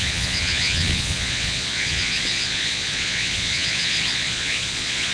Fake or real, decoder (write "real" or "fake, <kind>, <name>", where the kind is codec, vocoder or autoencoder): fake, vocoder, Vocos